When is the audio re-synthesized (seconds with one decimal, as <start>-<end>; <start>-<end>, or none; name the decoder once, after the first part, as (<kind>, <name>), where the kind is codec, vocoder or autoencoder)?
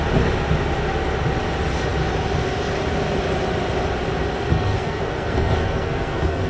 4.5-6.5 (codec, SNAC)